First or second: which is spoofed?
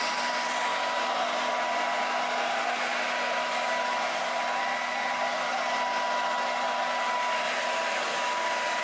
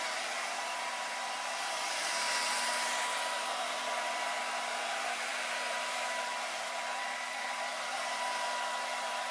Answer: second